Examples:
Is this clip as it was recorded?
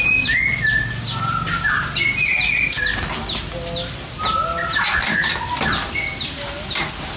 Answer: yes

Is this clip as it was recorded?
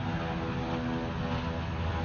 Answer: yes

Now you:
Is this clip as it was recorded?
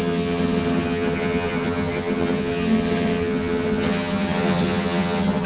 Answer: no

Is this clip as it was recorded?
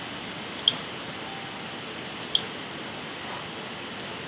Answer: yes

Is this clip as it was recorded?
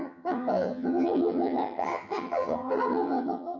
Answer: no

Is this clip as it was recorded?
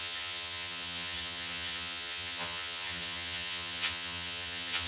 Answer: no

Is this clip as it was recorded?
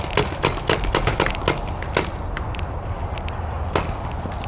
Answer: yes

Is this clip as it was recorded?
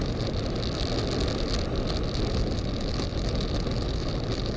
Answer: yes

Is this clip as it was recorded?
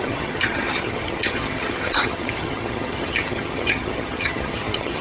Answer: no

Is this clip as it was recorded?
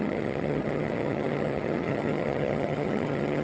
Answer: no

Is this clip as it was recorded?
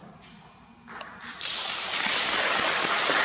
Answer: yes